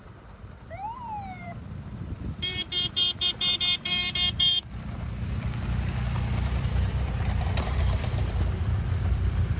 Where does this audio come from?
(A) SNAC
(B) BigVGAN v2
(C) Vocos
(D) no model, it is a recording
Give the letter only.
B